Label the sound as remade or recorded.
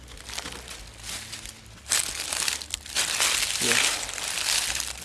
recorded